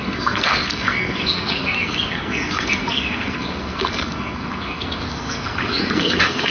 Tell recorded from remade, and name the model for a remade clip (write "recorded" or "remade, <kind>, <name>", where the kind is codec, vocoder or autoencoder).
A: remade, codec, SNAC